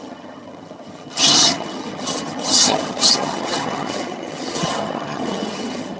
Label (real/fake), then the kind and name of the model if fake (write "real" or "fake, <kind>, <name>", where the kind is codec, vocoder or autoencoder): fake, vocoder, HiFi-GAN